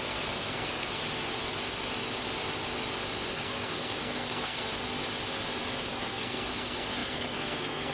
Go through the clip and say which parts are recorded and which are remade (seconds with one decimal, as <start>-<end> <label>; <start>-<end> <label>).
0.0-1.0 remade; 1.0-3.3 recorded; 3.3-4.7 remade; 4.7-5.8 recorded; 5.8-7.9 remade